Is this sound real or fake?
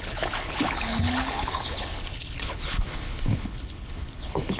fake